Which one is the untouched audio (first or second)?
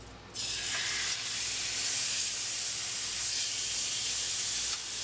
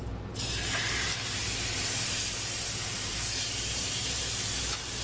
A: first